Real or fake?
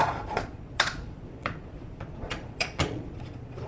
fake